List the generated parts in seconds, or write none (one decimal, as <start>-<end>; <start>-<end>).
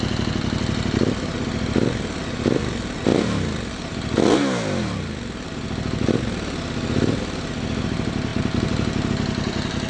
none